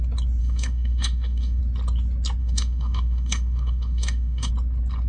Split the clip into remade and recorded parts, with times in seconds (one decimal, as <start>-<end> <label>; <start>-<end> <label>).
0.0-0.4 recorded; 0.4-1.6 remade; 1.6-2.4 recorded; 2.4-4.5 remade; 4.5-5.1 recorded